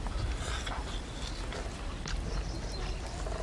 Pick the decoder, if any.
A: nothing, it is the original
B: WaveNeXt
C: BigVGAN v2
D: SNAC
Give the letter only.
A